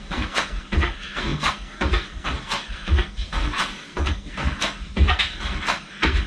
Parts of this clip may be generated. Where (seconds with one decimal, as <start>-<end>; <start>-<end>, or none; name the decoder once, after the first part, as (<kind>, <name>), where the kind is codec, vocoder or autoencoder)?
0.0-6.3 (codec, SNAC)